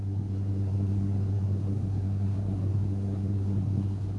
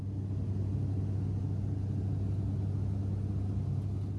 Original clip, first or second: second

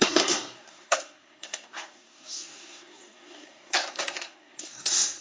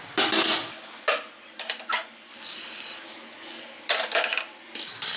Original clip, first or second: second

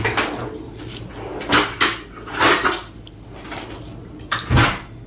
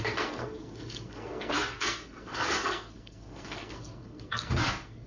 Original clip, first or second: first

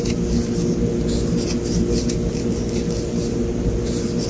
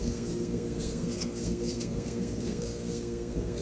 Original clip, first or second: first